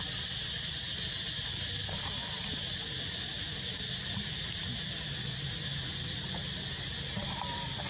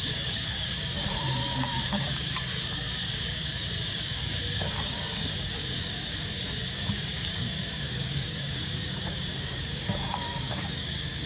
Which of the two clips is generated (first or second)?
second